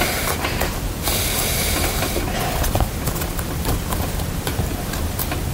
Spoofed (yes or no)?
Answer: no